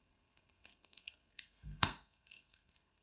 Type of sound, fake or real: fake